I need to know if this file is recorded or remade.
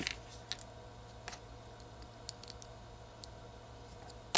recorded